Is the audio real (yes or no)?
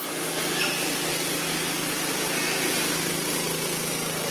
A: yes